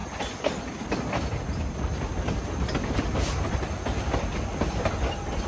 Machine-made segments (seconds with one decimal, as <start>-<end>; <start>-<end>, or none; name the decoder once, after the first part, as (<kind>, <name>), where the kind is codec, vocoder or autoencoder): none